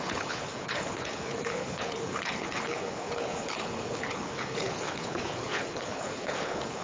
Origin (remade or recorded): remade